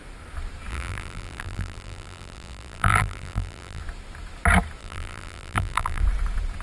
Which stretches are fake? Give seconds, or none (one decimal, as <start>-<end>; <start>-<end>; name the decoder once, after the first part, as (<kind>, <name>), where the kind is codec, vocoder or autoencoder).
0.7-3.8 (vocoder, BigVGAN v2); 4.8-6.0